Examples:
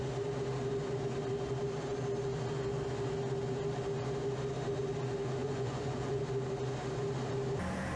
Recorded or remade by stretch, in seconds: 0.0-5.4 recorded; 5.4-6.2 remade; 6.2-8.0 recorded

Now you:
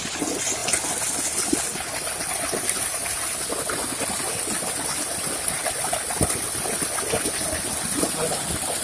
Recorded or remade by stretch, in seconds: 0.0-8.8 recorded

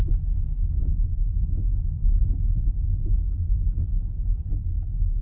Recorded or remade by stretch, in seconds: 0.0-5.2 recorded

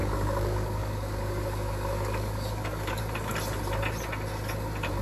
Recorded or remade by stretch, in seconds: 0.0-3.0 remade; 3.0-5.0 recorded

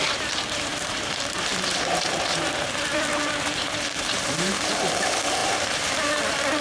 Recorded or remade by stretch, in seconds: 0.0-6.6 remade